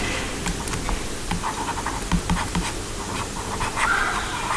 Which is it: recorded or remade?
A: remade